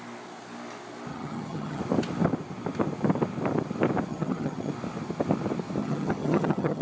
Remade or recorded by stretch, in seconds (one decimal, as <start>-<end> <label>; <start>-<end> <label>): 0.0-1.1 recorded; 1.1-1.8 remade; 1.8-4.1 recorded; 4.1-4.7 remade; 4.7-5.8 recorded; 5.8-6.8 remade